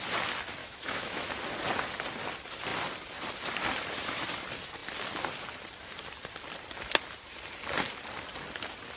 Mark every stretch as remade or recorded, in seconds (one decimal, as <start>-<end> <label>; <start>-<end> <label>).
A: 0.0-0.6 recorded; 0.6-1.3 remade; 1.3-9.0 recorded